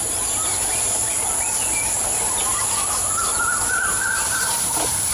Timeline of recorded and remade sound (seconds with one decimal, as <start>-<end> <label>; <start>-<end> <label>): 0.0-0.4 recorded; 0.4-1.7 remade; 1.7-5.1 recorded